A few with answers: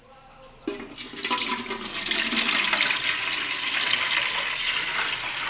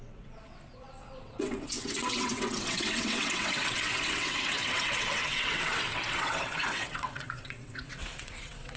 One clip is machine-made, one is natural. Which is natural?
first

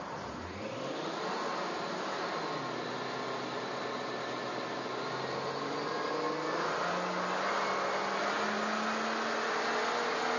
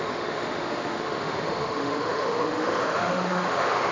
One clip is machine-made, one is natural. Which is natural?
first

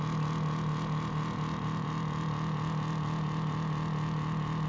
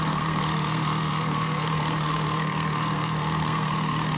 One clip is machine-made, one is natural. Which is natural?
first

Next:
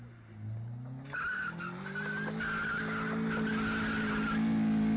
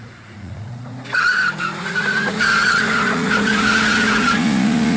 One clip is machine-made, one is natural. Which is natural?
first